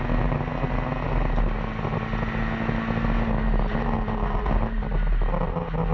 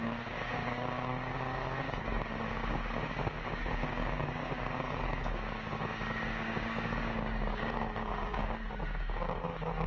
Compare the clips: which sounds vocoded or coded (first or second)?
second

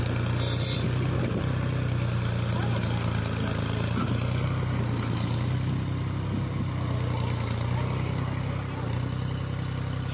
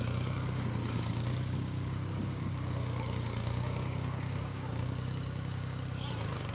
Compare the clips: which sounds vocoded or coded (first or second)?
second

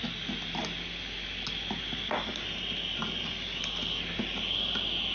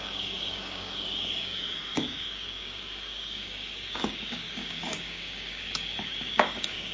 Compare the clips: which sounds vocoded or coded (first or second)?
second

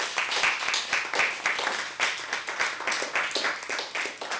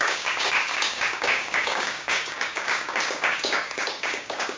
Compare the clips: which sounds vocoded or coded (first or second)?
second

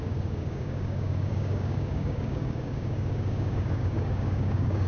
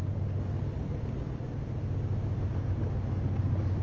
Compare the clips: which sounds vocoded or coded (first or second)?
first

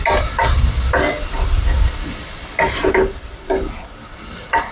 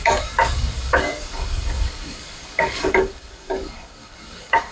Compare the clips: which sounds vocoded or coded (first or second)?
second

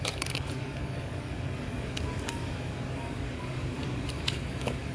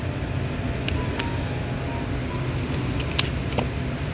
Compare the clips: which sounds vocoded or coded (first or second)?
first